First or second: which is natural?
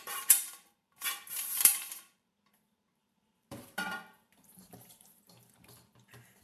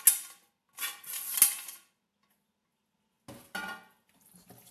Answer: second